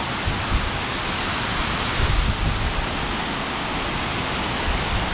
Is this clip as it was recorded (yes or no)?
yes